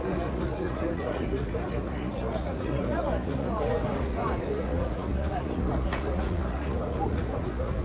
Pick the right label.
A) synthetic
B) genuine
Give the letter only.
A